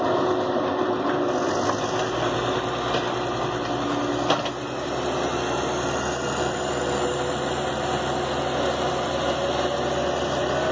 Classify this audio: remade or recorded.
recorded